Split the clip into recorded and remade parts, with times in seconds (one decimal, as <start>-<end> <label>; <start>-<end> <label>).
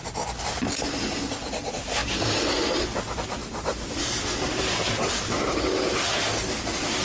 0.0-2.0 recorded; 2.0-2.6 remade; 2.6-3.4 recorded; 3.4-6.2 remade; 6.2-7.0 recorded